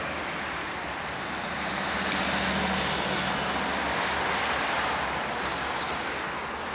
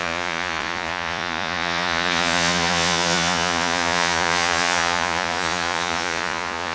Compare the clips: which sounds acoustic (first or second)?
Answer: first